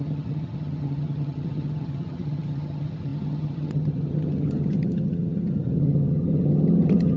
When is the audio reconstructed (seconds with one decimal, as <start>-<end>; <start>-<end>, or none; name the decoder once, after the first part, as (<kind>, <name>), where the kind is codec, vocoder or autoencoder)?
0.0-7.2 (vocoder, HiFi-GAN)